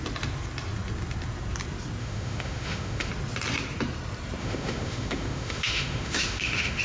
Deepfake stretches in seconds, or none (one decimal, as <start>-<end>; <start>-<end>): 2.0-3.1; 4.4-6.8